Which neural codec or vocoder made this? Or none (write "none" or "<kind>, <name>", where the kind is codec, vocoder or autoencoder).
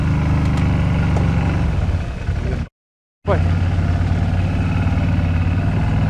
none